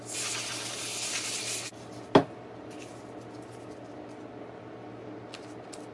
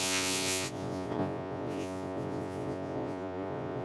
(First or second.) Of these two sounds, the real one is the first